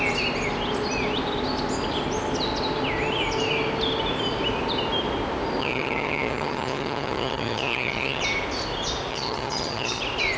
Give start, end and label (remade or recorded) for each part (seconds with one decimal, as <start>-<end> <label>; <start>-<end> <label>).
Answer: 0.0-5.6 recorded; 5.6-8.2 remade; 8.2-9.1 recorded; 9.1-10.0 remade; 10.0-10.4 recorded